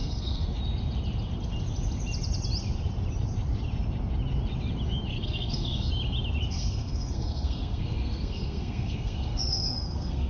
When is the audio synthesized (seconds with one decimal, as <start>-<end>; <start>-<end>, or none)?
0.0-0.6; 5.1-5.9; 6.5-10.3